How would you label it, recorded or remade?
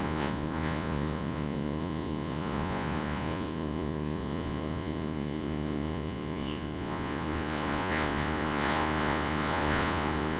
remade